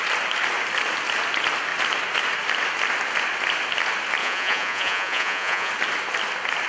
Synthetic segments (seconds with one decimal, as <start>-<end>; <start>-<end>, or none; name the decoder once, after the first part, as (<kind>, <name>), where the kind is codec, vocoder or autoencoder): 4.2-5.7 (vocoder, Vocos)